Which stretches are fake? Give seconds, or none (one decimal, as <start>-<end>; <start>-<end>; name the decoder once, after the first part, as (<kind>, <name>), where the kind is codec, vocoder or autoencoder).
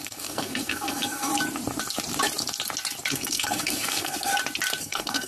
0.0-1.3 (codec, SNAC); 3.1-4.3; 4.8-5.3